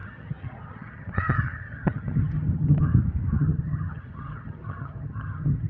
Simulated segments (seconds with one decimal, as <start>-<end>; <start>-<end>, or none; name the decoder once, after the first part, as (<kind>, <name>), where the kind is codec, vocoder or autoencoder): 0.0-2.9 (vocoder, HiFi-GAN); 3.4-5.7